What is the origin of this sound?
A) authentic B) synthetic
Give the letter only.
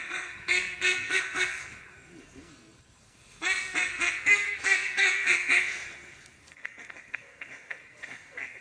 B